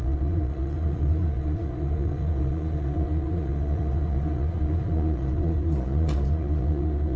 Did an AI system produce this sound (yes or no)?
yes